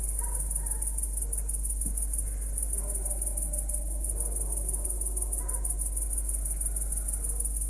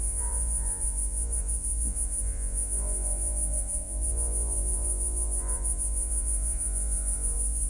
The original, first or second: first